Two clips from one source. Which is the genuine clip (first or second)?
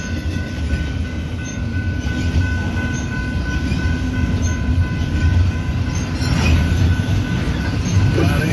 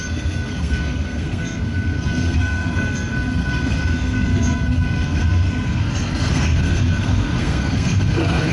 first